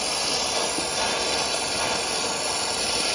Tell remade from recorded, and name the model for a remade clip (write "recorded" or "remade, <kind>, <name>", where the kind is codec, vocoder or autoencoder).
recorded